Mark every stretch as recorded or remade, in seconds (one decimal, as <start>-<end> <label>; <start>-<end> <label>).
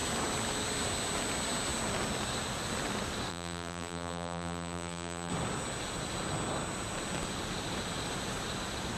0.0-3.3 recorded; 3.3-5.3 remade; 5.3-9.0 recorded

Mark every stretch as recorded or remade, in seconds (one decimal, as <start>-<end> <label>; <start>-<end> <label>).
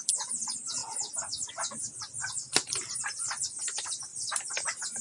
0.0-4.1 recorded; 4.1-5.0 remade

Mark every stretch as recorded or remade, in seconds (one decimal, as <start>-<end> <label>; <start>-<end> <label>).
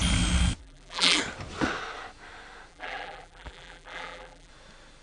0.0-0.6 recorded; 0.6-1.2 remade; 1.2-2.7 recorded; 2.7-4.5 remade; 4.5-5.0 recorded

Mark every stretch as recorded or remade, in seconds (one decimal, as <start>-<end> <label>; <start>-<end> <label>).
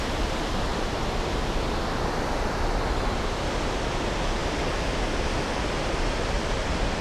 0.0-7.0 recorded